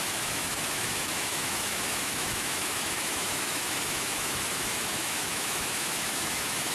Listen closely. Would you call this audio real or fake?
fake